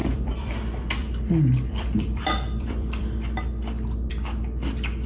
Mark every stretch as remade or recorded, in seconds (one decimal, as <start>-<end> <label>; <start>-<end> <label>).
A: 0.0-0.5 remade; 0.5-1.0 recorded; 1.0-4.1 remade; 4.1-5.1 recorded